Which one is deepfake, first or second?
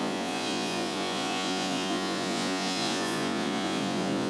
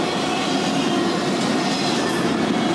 first